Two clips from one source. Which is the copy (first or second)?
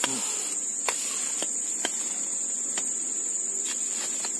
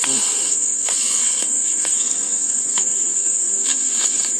second